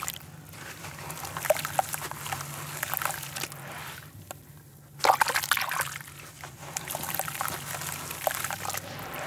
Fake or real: real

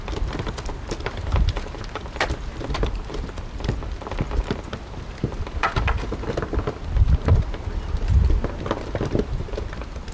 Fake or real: fake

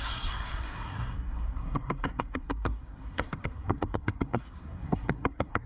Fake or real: fake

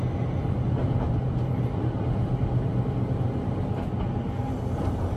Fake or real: real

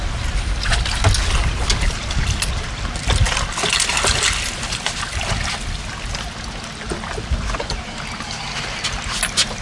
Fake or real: real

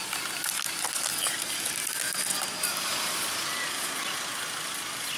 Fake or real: real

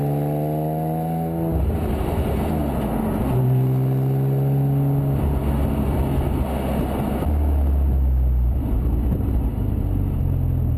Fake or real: real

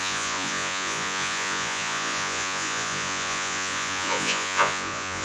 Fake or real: fake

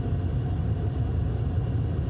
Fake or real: real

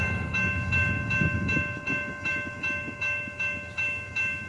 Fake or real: fake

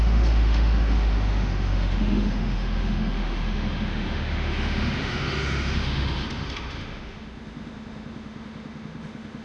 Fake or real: fake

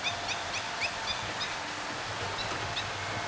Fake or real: real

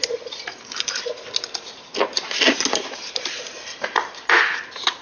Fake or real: real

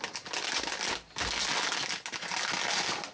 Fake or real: real